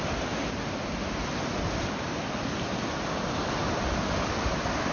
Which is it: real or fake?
real